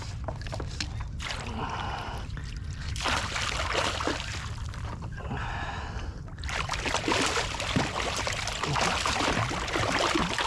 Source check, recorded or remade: recorded